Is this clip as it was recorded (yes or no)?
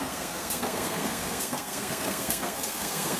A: no